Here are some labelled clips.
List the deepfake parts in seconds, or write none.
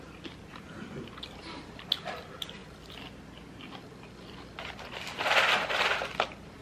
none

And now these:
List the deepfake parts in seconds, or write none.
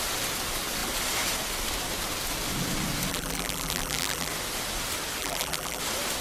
3.1-4.3 (vocoder, BigVGAN v2); 5.2-5.8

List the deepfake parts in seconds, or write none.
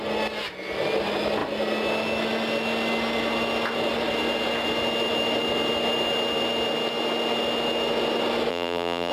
8.5-9.1 (vocoder, BigVGAN v2)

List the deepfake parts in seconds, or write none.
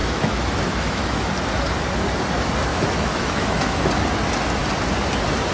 0.0-1.3 (autoencoder, DAC-VAE); 2.7-3.9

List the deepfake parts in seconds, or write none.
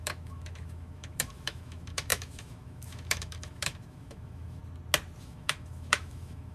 0.0-4.6 (autoencoder, DAC-VAE); 5.2-6.5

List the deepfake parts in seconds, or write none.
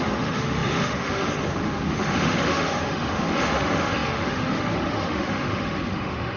0.0-6.4 (autoencoder, DAC-VAE)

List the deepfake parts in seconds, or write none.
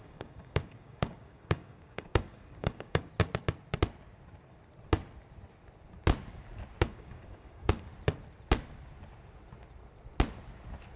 0.0-3.1 (codec, DAC); 6.9-7.9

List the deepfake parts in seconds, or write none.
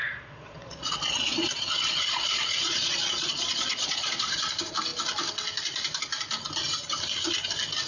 0.0-4.5 (vocoder, Vocos)